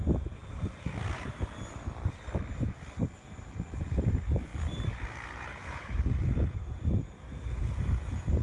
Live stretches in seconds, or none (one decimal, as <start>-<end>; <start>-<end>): 0.4-3.8; 4.5-5.4